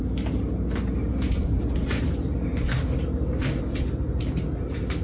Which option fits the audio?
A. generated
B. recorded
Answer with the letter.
B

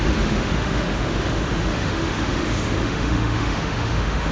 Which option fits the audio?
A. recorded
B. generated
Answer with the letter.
B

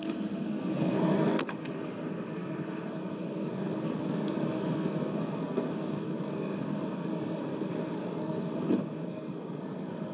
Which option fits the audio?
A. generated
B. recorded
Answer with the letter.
A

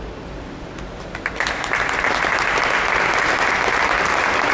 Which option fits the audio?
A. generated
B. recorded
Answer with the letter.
B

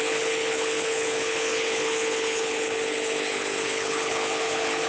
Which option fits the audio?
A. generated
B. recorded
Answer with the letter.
A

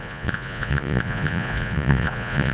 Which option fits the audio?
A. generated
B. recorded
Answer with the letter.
A